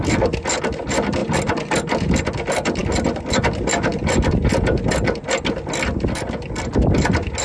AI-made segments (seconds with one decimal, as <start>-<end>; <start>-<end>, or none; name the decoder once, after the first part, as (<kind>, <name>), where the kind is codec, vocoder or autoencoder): none